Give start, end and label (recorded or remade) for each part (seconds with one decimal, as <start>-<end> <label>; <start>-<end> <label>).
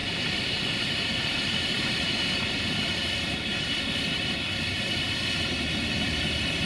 0.0-6.7 remade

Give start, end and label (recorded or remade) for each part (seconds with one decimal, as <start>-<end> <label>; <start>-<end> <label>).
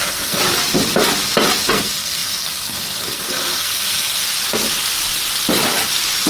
0.0-0.4 remade; 0.4-1.7 recorded; 1.7-4.2 remade; 4.2-6.3 recorded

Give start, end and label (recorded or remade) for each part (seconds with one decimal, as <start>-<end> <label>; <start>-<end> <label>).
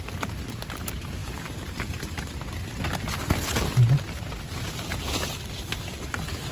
0.0-6.5 recorded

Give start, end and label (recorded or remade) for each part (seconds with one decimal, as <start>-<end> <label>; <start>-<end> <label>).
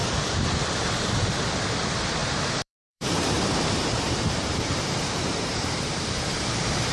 0.0-2.2 recorded; 2.2-6.2 remade; 6.2-6.9 recorded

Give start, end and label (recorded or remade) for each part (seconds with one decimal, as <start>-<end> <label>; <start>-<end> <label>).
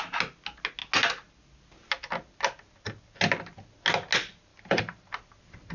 0.0-4.5 recorded; 4.5-5.1 remade; 5.1-5.7 recorded